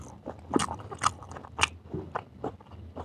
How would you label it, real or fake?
real